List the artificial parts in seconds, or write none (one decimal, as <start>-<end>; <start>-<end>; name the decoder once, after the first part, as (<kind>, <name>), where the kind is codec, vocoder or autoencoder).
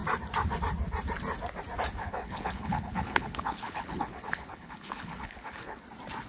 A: 2.0-5.8 (codec, HILCodec)